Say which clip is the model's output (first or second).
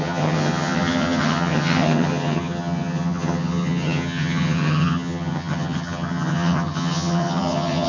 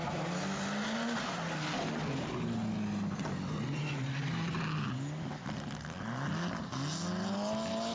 first